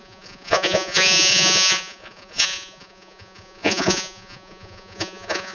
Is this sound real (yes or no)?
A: no